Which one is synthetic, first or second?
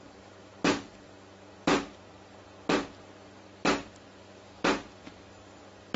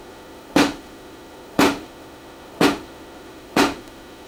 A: second